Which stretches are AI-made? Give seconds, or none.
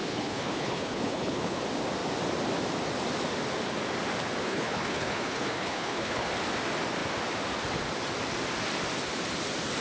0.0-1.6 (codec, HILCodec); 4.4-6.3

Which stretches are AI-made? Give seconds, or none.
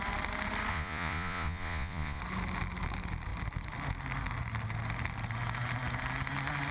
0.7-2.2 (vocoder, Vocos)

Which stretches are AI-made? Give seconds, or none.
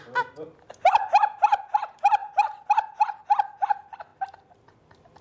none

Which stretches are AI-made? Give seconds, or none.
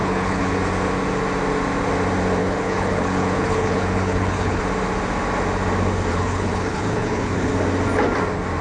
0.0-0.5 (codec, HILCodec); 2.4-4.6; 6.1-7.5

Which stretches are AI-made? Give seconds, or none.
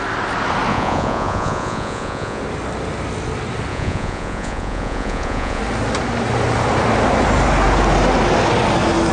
0.7-2.4 (vocoder, Vocos); 3.7-5.6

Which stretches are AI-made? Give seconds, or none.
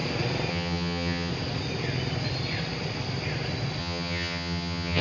0.5-1.3 (vocoder, HiFi-GAN); 3.8-5.0